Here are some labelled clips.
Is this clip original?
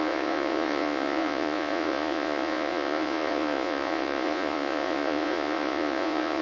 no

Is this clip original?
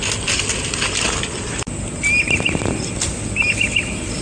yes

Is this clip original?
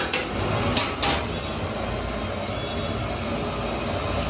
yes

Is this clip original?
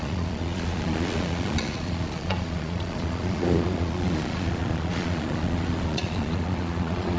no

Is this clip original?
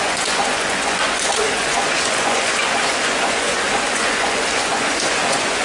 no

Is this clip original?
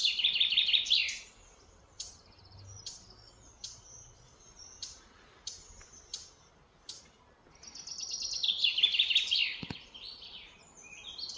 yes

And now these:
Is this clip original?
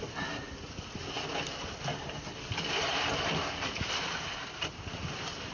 yes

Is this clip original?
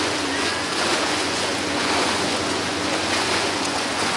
no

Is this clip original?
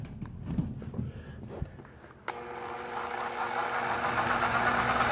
yes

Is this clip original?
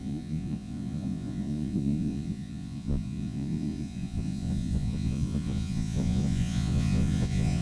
no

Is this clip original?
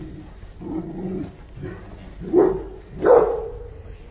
yes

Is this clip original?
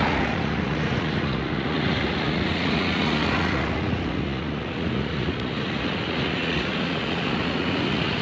no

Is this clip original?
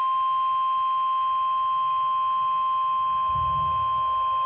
yes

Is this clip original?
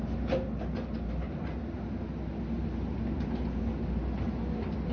yes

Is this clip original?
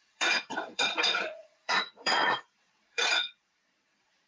no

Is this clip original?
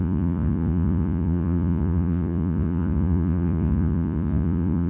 no